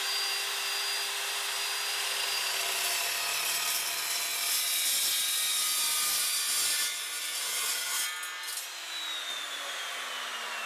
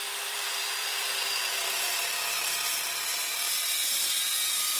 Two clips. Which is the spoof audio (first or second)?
second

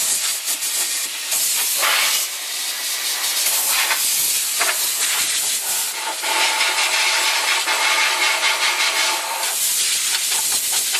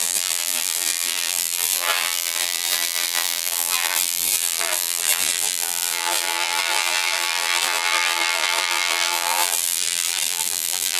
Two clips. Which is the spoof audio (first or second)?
second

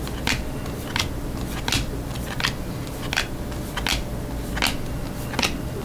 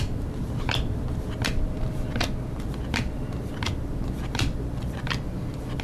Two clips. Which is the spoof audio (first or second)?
second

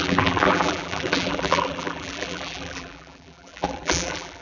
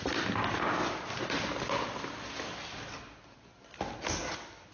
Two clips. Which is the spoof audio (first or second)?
first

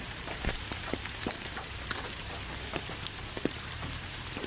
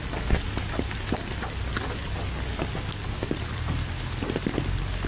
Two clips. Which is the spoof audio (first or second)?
first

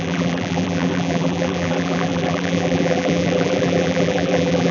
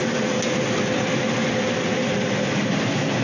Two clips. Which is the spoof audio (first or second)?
first